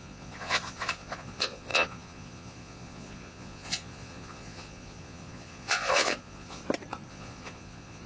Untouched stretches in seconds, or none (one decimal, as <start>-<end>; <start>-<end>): 6.6-7.1